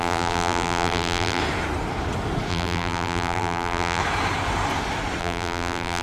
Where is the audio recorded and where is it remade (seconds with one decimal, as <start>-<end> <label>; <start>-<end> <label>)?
0.0-1.4 remade; 1.4-2.5 recorded; 2.5-4.0 remade; 4.0-5.2 recorded; 5.2-6.0 remade